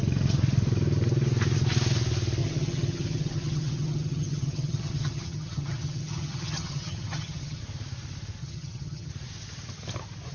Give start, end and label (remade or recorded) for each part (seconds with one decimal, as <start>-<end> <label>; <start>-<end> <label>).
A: 0.0-2.4 recorded; 2.4-7.6 remade; 7.6-8.4 recorded; 8.4-9.1 remade; 9.1-10.3 recorded